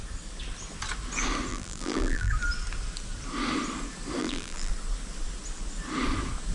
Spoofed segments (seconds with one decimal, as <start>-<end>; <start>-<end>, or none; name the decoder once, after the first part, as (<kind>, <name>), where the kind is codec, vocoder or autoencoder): 1.5-2.3 (vocoder, BigVGAN v2); 4.2-4.7